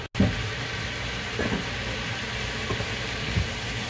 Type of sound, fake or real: real